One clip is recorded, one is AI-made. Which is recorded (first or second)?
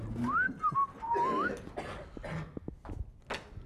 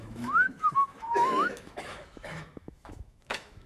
first